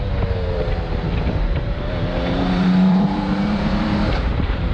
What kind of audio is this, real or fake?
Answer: fake